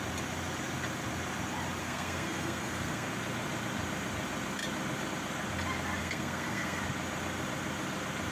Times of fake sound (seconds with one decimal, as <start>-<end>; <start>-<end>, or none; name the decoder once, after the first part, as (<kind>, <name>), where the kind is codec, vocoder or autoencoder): 1.8-3.1 (codec, SNAC); 6.0-6.8